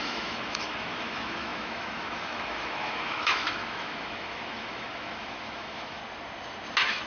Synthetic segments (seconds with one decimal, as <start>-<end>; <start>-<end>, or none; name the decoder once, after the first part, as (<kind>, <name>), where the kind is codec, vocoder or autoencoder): 0.0-6.0 (autoencoder, DAC-VAE)